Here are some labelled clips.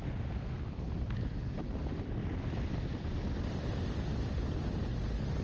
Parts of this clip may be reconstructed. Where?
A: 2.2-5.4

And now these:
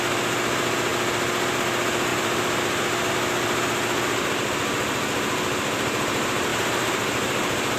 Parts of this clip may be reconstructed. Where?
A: 2.1-3.1